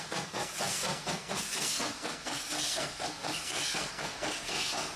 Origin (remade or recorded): remade